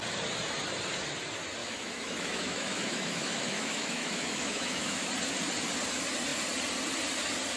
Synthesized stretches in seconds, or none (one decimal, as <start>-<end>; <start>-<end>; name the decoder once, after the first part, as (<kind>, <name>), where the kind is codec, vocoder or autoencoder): 1.6-5.1 (autoencoder, DAC-VAE)